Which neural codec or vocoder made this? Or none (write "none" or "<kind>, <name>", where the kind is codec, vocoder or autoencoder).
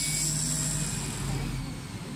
none